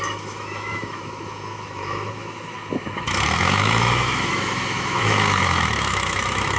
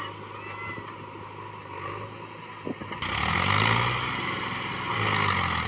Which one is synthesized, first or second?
first